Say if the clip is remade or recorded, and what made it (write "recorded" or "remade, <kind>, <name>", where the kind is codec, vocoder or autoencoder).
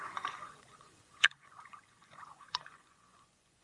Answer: remade, vocoder, Vocos